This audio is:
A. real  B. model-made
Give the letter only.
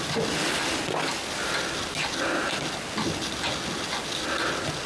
A